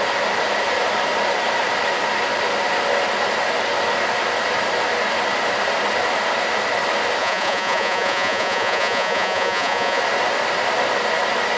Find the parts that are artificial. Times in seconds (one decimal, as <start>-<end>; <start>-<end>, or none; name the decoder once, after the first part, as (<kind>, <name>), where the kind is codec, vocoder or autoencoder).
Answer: 7.2-10.0 (vocoder, Vocos)